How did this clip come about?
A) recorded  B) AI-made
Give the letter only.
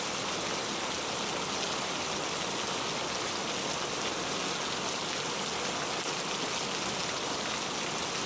A